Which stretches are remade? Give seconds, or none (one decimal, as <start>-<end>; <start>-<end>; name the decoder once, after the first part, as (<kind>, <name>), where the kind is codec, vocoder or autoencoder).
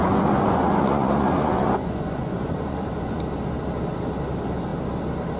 0.0-3.2 (vocoder, Vocos)